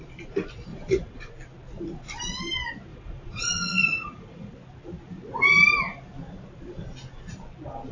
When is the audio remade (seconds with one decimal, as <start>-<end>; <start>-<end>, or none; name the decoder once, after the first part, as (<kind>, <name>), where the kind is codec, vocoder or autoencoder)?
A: 0.7-1.3 (vocoder, Vocos); 2.9-4.5